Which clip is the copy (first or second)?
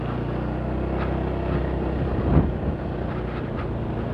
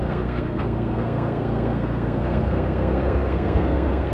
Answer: second